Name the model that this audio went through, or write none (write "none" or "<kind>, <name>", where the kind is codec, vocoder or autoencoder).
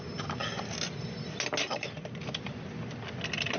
none